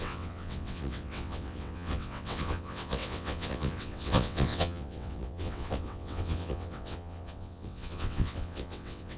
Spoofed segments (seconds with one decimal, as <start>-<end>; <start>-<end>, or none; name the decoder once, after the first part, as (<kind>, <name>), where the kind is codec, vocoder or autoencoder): 0.0-9.2 (vocoder, WaveNeXt)